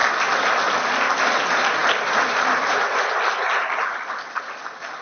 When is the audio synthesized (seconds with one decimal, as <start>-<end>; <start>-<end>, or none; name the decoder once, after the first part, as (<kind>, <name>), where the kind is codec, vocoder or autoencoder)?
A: none